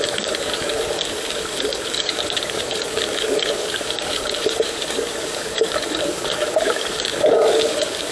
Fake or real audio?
fake